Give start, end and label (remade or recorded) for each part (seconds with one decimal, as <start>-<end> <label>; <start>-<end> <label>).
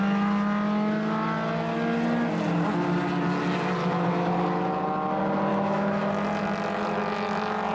0.0-5.5 recorded; 5.5-6.1 remade; 6.1-7.7 recorded